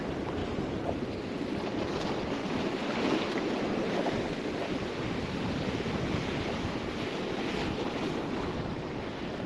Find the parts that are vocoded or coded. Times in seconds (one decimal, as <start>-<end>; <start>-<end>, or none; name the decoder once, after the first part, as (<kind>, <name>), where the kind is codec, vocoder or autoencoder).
none